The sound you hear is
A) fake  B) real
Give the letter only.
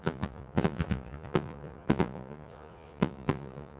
A